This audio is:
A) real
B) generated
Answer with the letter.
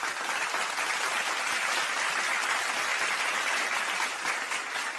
B